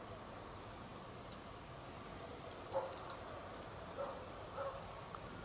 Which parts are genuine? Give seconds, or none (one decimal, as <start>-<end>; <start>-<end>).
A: 0.0-5.4